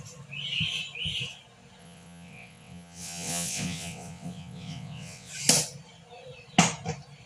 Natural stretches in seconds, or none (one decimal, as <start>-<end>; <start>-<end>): 0.0-1.8; 5.3-7.3